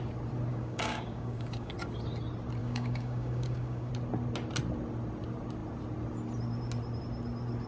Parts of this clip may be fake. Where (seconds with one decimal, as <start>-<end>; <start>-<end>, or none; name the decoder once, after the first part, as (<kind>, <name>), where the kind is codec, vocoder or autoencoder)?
0.5-1.7 (codec, DAC); 2.6-3.9